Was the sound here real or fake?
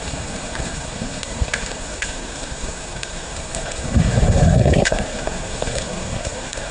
fake